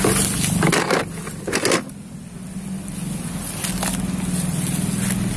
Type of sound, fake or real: real